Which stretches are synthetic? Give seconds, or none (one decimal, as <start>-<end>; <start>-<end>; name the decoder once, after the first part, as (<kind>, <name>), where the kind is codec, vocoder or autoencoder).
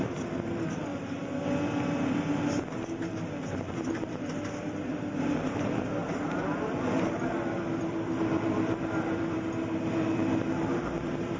0.0-0.9 (vocoder, BigVGAN v2); 3.7-11.4